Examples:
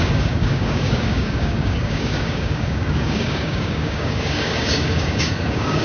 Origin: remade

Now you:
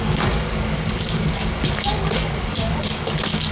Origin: remade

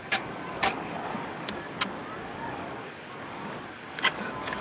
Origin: remade